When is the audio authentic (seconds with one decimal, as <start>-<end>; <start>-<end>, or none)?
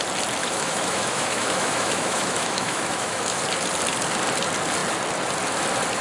0.0-0.4; 3.4-6.0